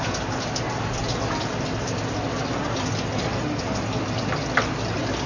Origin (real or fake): real